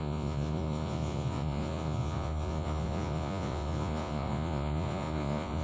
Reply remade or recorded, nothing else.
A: remade